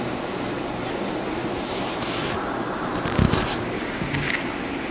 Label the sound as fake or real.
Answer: fake